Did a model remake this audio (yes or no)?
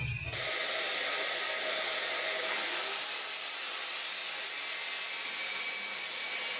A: no